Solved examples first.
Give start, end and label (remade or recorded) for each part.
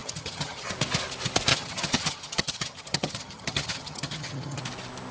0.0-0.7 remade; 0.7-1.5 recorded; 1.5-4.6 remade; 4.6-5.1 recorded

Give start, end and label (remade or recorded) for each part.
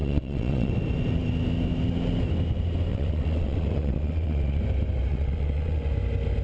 0.0-0.7 remade; 0.7-2.9 recorded; 2.9-4.6 remade; 4.6-5.1 recorded; 5.1-5.9 remade; 5.9-6.4 recorded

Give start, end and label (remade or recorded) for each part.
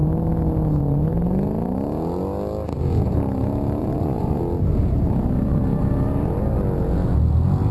0.0-3.8 recorded; 3.8-4.4 remade; 4.4-7.7 recorded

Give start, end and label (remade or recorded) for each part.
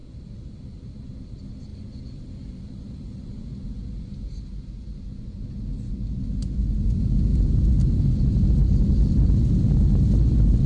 0.0-10.7 recorded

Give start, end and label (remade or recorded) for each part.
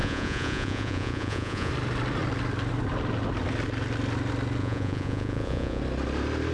0.0-1.7 remade; 1.7-4.6 recorded; 4.6-5.8 remade; 5.8-6.5 recorded